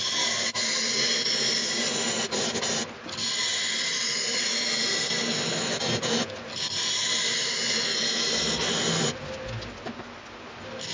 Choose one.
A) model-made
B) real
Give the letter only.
B